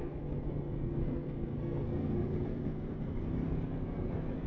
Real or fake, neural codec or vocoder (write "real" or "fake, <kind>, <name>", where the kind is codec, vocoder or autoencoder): fake, codec, SNAC